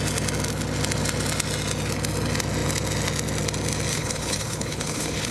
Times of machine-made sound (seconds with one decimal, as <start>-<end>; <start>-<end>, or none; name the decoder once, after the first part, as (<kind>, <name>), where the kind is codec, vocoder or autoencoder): 3.9-5.3 (codec, HILCodec)